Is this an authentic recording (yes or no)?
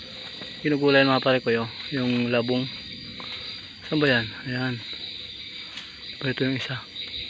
yes